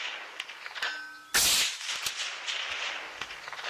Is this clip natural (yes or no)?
yes